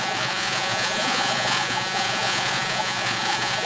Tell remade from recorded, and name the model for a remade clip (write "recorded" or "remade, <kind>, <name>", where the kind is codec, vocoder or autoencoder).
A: remade, vocoder, Vocos